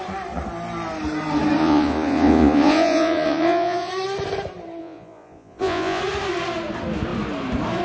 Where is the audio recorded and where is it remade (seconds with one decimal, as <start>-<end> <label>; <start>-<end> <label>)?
0.0-1.6 recorded; 1.6-3.9 remade; 3.9-4.8 recorded; 4.8-6.0 remade; 6.0-7.8 recorded